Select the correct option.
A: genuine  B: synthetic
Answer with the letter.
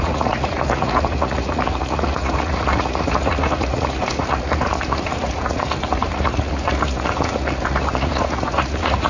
B